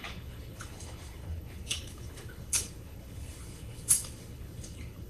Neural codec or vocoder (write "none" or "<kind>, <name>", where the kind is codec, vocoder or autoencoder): codec, HILCodec